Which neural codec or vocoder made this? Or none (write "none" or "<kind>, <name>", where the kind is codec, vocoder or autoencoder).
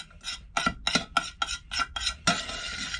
none